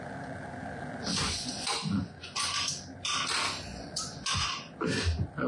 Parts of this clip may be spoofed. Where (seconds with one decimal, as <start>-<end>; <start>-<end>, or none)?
1.1-2.7; 3.7-4.3